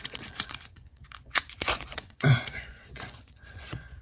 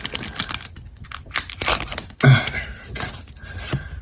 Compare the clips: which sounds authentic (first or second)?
second